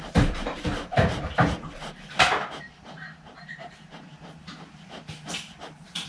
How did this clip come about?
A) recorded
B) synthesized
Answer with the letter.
B